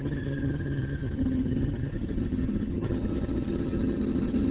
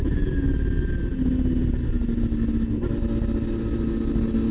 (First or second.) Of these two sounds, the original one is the second